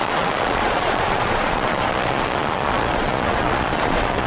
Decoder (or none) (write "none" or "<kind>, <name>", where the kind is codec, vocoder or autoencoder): vocoder, Vocos